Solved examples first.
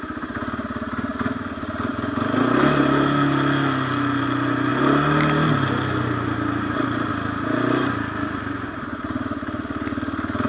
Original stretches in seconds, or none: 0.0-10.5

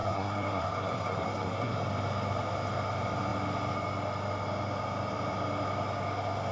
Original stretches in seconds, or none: 1.7-6.5

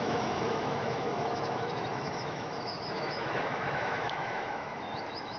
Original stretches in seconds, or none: none

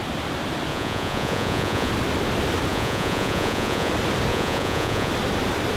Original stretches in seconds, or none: 0.0-0.7; 1.9-2.7; 3.9-4.3; 5.1-5.8

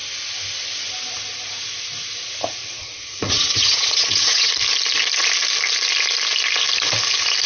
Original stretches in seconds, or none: 0.0-2.6; 4.5-7.5

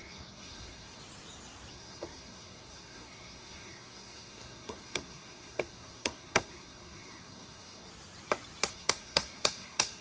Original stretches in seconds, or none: 1.0-1.7; 7.9-8.7